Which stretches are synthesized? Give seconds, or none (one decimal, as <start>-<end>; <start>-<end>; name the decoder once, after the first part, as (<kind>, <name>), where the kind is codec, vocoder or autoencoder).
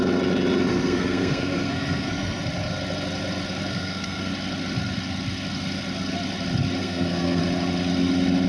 0.7-2.4 (codec, SNAC); 3.7-4.3; 6.8-7.4